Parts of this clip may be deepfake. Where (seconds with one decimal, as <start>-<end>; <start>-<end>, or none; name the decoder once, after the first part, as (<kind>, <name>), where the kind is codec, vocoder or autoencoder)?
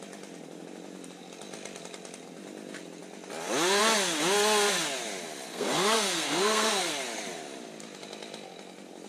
5.5-6.9 (codec, SNAC)